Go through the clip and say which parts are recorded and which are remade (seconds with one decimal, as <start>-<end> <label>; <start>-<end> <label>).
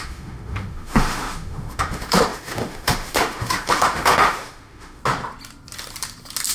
0.0-5.0 remade; 5.0-6.5 recorded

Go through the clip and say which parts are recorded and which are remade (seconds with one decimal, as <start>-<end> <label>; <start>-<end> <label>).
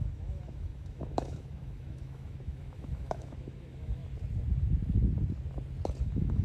0.0-4.0 remade; 4.0-6.0 recorded; 6.0-6.4 remade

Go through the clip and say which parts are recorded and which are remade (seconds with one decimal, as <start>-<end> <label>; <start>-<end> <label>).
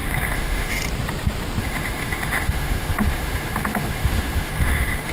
0.0-0.7 remade; 0.7-1.6 recorded; 1.6-5.1 remade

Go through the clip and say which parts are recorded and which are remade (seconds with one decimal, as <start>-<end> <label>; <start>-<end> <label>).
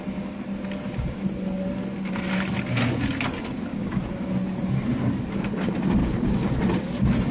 0.0-3.7 recorded; 3.7-4.3 remade; 4.3-6.0 recorded; 6.0-6.6 remade; 6.6-7.3 recorded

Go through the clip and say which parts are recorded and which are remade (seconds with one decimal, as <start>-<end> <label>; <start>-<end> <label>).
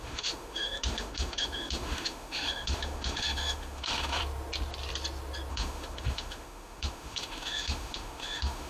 0.0-4.2 remade; 4.2-5.5 recorded; 5.5-8.7 remade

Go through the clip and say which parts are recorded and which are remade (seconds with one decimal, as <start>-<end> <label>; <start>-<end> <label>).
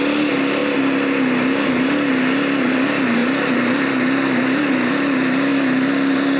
0.0-6.4 recorded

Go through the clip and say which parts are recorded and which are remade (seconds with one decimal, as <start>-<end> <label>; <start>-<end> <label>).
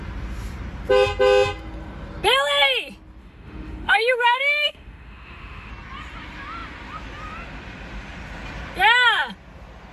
0.0-3.2 recorded; 3.2-5.7 remade; 5.7-9.9 recorded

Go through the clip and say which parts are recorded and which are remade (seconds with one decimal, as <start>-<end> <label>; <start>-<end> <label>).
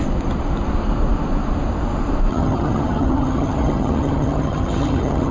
0.0-2.3 recorded; 2.3-5.3 remade